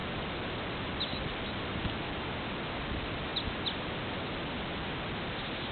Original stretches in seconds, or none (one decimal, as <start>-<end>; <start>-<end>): 0.0-5.7